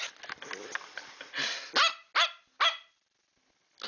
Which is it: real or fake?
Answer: real